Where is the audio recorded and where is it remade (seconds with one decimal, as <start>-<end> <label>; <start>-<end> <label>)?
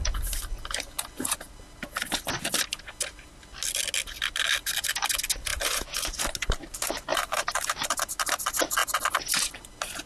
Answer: 0.0-7.1 recorded; 7.1-8.0 remade; 8.0-10.1 recorded